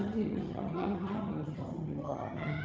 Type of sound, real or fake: fake